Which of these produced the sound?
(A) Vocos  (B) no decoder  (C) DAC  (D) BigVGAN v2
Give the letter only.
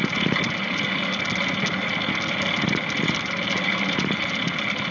B